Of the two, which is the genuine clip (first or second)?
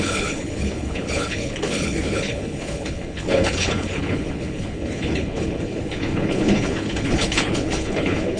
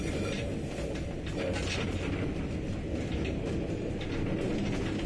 second